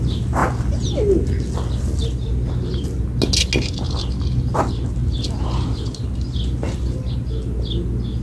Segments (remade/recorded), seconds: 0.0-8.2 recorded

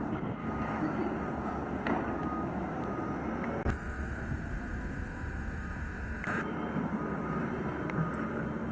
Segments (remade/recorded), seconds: 0.0-0.4 recorded; 0.4-1.0 remade; 1.0-2.2 recorded; 2.2-2.8 remade; 2.8-8.7 recorded

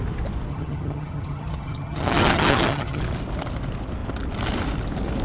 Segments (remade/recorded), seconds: 0.0-0.5 recorded; 0.5-3.0 remade; 3.0-5.2 recorded

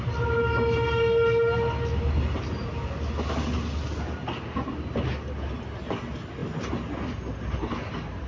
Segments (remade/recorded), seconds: 0.0-8.3 recorded

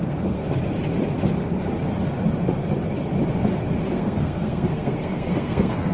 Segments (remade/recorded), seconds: 0.0-0.4 remade; 0.4-3.9 recorded; 3.9-5.9 remade